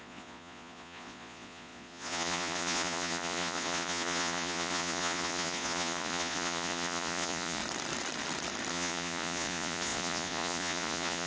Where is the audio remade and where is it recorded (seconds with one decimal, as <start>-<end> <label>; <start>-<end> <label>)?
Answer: 0.0-7.6 remade; 7.6-8.7 recorded; 8.7-11.3 remade